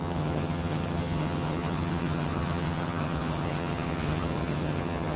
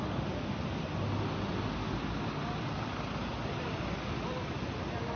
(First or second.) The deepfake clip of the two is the first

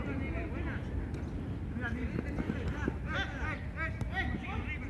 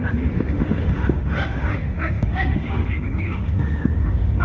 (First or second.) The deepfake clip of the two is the second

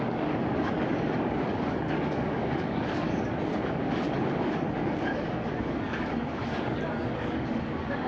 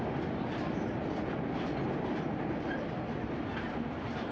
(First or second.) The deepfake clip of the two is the first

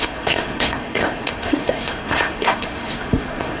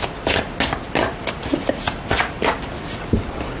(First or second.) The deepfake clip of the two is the first